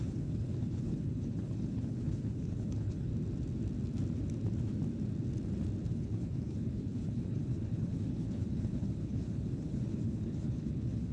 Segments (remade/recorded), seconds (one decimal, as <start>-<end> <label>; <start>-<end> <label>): 0.0-3.1 remade; 3.1-5.9 recorded; 5.9-11.1 remade